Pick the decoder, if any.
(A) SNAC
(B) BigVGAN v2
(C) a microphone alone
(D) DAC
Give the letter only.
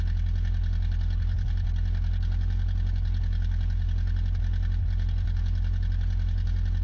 C